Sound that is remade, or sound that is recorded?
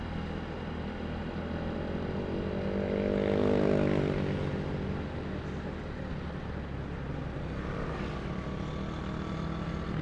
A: recorded